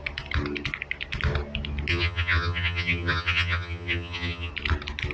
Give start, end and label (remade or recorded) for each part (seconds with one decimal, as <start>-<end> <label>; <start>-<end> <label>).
0.0-1.9 recorded; 1.9-4.5 remade; 4.5-5.1 recorded

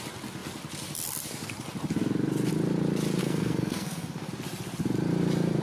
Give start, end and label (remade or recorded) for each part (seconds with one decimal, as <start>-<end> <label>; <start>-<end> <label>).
0.0-3.2 recorded; 3.2-4.3 remade; 4.3-5.6 recorded

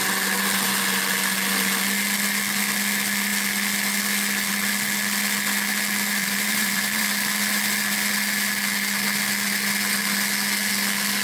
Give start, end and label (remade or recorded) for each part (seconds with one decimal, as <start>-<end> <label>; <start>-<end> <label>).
0.0-6.2 recorded; 6.2-7.1 remade; 7.1-11.2 recorded

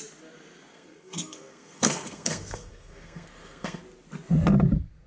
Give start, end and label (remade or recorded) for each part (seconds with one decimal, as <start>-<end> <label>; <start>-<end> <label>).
0.0-0.7 recorded; 0.7-3.8 remade; 3.8-5.1 recorded

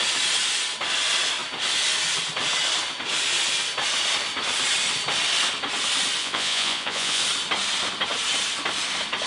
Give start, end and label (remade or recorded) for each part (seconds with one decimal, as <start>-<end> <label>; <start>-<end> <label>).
0.0-6.2 recorded; 6.2-7.2 remade; 7.2-9.3 recorded

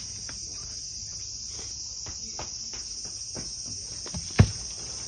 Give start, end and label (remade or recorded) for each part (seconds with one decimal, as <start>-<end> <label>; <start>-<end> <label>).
0.0-5.1 recorded

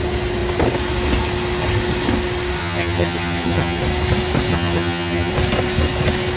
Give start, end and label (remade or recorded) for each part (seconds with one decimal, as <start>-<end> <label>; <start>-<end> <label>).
0.0-2.6 recorded; 2.6-3.8 remade; 3.8-4.5 recorded; 4.5-5.3 remade; 5.3-6.4 recorded

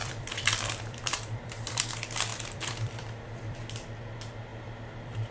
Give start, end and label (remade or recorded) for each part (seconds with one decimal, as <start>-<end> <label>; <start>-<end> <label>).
0.0-1.9 remade; 1.9-2.3 recorded; 2.3-3.6 remade; 3.6-4.5 recorded; 4.5-5.3 remade